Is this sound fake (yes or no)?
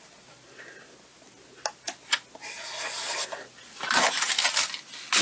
no